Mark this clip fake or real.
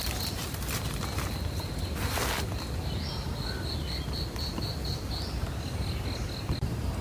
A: real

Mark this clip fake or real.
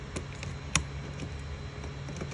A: real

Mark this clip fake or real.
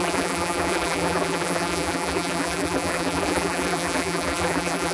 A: fake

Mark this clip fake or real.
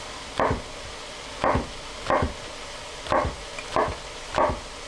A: real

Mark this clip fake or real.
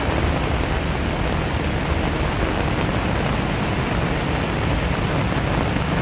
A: real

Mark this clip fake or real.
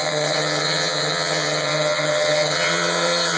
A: fake